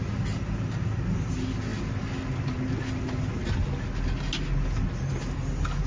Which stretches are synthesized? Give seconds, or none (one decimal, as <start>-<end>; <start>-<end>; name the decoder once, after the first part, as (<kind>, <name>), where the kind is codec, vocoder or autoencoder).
none